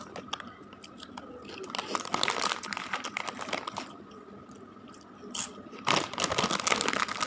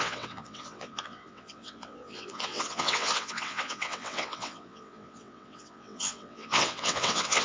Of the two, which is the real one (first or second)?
first